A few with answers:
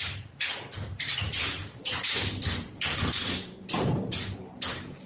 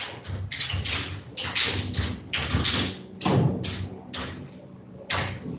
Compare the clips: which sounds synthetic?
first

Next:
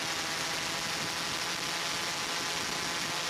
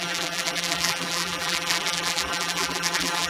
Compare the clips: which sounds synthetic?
second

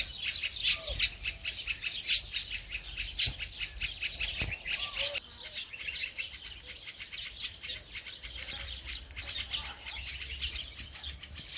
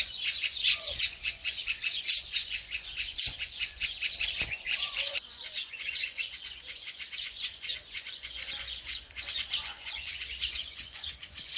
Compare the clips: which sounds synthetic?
second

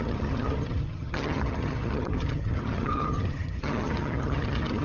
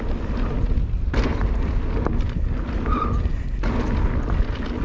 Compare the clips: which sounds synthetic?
first